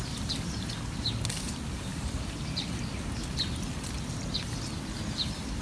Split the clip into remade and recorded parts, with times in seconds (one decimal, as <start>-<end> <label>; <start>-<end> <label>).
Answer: 0.0-5.6 recorded